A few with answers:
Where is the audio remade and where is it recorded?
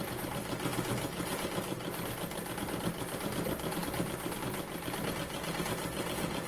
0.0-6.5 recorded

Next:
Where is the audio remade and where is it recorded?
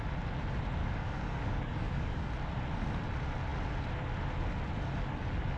0.0-0.8 recorded; 0.8-2.3 remade; 2.3-5.6 recorded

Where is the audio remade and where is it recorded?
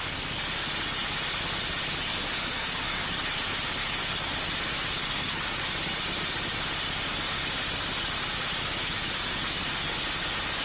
0.0-2.1 recorded; 2.1-3.4 remade; 3.4-3.8 recorded; 3.8-4.4 remade; 4.4-5.0 recorded; 5.0-5.6 remade; 5.6-10.6 recorded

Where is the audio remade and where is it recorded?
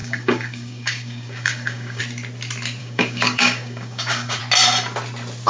0.0-2.0 remade; 2.0-2.8 recorded; 2.8-4.4 remade; 4.4-5.5 recorded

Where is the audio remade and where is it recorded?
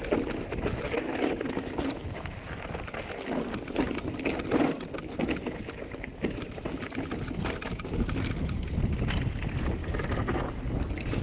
0.0-9.8 recorded; 9.8-11.2 remade